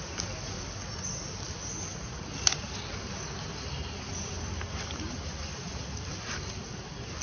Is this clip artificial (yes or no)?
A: no